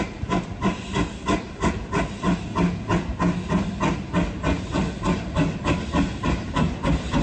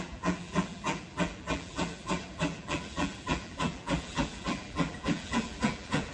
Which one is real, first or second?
first